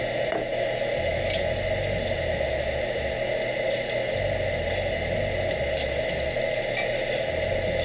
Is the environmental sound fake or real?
real